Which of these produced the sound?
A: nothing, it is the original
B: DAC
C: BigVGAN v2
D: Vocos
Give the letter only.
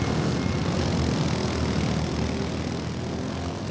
A